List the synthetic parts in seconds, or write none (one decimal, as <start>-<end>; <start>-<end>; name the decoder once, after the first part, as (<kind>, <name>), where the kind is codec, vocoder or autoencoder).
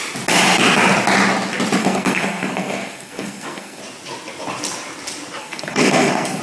1.8-3.8 (codec, SNAC); 5.4-6.4